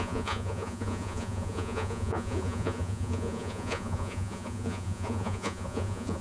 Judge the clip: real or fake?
fake